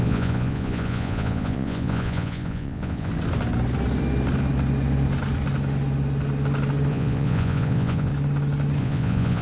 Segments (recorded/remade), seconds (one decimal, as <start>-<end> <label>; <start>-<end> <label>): 0.0-3.1 remade; 3.1-6.9 recorded; 6.9-8.1 remade; 8.1-8.8 recorded; 8.8-9.4 remade